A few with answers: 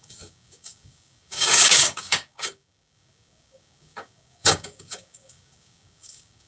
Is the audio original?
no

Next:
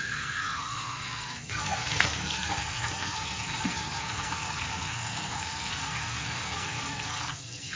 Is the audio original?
no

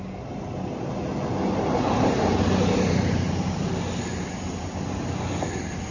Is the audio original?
yes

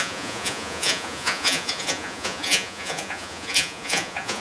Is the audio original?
no